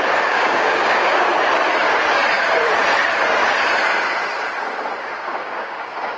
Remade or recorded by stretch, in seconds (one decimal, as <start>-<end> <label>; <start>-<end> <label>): 0.0-1.3 remade; 1.3-5.0 recorded; 5.0-6.2 remade